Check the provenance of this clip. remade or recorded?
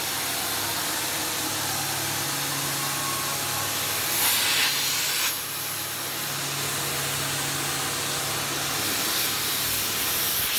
recorded